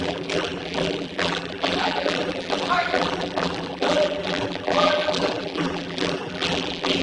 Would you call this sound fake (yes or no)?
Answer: yes